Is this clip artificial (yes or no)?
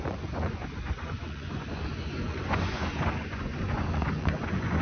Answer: yes